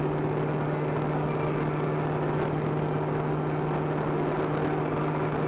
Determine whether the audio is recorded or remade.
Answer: recorded